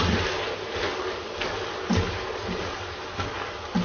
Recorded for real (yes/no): yes